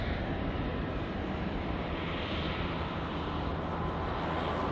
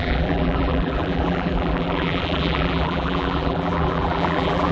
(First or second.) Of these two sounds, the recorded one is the first